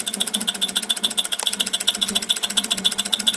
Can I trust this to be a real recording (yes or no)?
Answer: yes